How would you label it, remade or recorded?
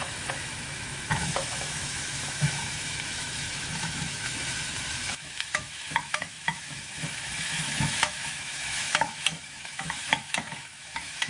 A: remade